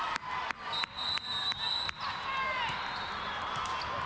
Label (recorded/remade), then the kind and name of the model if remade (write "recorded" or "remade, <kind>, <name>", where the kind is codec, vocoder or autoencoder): recorded